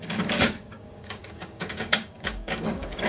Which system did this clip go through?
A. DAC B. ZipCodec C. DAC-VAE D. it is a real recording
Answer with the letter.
A